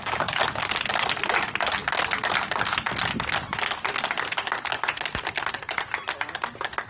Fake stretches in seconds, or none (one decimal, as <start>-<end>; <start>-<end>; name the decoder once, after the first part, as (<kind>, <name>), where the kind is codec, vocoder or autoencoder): none